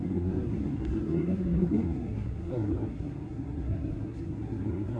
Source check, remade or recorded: remade